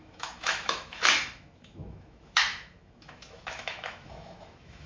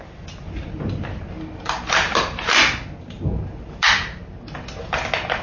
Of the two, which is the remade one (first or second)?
first